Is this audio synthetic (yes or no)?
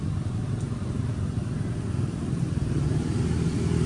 no